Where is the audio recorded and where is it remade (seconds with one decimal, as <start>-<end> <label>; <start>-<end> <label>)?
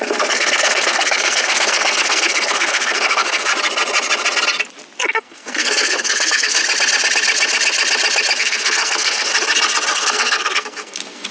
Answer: 0.0-3.5 remade; 3.5-5.0 recorded; 5.0-6.6 remade; 6.6-8.4 recorded; 8.4-9.3 remade; 9.3-9.9 recorded; 9.9-11.3 remade